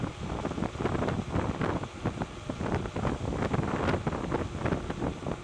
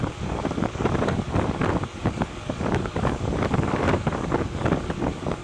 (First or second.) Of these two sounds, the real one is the first